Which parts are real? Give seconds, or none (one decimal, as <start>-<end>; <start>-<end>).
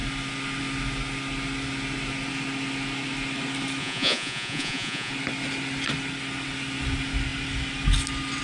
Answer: 0.0-3.8; 5.1-8.4